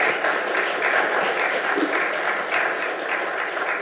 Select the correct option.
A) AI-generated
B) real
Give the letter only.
B